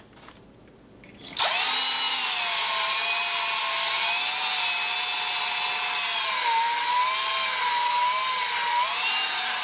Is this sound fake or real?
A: real